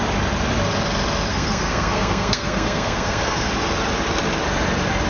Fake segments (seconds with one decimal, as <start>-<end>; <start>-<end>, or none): 1.3-3.5